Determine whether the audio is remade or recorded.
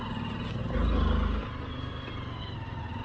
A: recorded